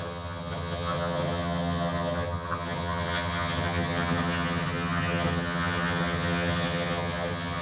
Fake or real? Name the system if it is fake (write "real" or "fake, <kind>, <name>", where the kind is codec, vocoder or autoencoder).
fake, vocoder, HiFi-GAN